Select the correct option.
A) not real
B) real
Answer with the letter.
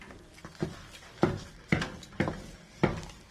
B